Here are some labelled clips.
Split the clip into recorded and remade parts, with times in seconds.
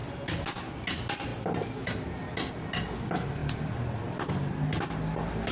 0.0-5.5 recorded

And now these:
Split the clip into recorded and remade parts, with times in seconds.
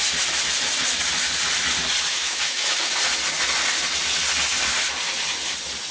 0.0-2.1 recorded; 2.1-2.9 remade; 2.9-5.9 recorded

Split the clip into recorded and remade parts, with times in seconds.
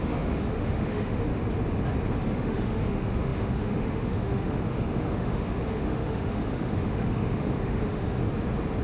0.0-1.3 remade; 1.3-2.3 recorded; 2.3-8.2 remade; 8.2-8.8 recorded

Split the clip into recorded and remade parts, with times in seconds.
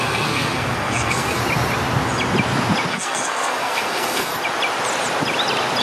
0.0-1.4 remade; 1.4-2.9 recorded; 2.9-4.3 remade; 4.3-5.8 recorded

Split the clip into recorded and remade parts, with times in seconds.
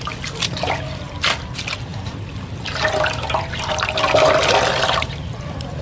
0.0-5.8 recorded